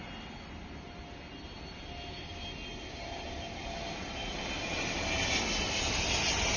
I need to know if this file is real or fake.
real